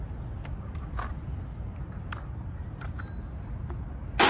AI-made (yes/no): no